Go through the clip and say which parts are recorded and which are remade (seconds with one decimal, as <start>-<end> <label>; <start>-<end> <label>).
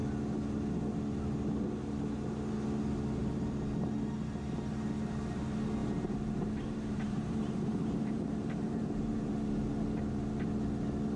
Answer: 0.0-3.2 recorded; 3.2-3.9 remade; 3.9-5.8 recorded; 5.8-9.5 remade; 9.5-11.2 recorded